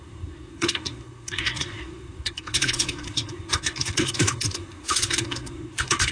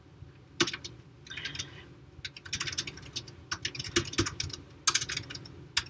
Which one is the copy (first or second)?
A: first